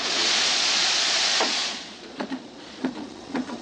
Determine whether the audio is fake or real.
fake